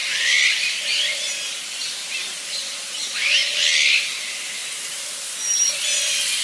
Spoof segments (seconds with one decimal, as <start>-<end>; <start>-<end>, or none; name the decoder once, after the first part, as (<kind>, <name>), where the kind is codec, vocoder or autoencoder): 0.0-1.2 (vocoder, BigVGAN v2)